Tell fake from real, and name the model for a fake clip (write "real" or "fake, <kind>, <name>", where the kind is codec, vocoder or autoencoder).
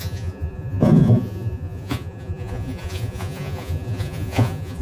fake, vocoder, Vocos